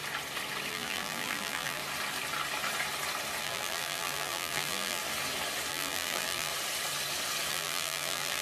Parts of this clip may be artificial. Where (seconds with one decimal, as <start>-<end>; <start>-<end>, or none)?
0.7-1.8; 3.4-5.0; 5.7-6.5; 7.5-8.4